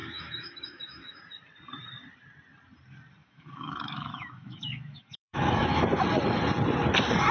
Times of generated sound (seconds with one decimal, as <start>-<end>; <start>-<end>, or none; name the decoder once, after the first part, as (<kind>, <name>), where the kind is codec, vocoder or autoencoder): 0.0-1.2 (autoencoder, DAC-VAE); 3.2-5.8